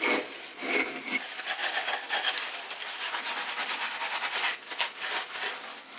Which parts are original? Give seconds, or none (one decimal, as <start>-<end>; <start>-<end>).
0.0-6.0